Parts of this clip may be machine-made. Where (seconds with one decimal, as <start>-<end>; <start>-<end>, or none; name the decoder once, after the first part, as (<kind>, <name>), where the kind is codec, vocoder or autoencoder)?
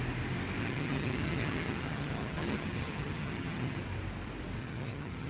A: 0.6-3.8 (vocoder, HiFi-GAN); 4.6-5.3